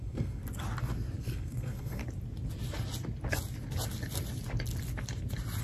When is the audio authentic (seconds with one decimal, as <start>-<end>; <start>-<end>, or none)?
0.4-1.2; 2.0-5.6